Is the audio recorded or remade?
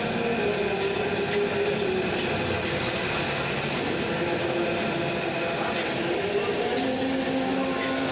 recorded